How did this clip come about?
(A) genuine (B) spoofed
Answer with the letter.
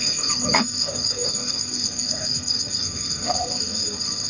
B